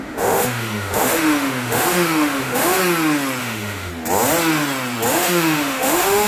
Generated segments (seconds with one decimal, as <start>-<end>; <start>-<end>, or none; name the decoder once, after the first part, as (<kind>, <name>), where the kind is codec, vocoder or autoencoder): 0.0-2.8 (autoencoder, DAC-VAE); 3.4-3.9; 5.1-6.3